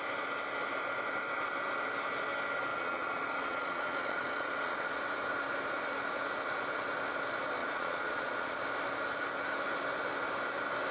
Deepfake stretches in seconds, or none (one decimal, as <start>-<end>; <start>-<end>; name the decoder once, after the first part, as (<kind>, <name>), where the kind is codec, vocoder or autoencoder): 2.7-5.0 (vocoder, Vocos); 7.6-8.6